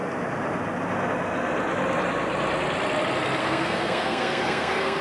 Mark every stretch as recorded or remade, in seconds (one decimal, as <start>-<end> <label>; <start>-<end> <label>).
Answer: 0.0-3.4 recorded; 3.4-5.0 remade